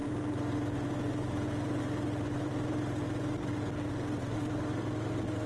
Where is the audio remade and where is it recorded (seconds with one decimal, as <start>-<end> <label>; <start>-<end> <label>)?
0.0-5.5 recorded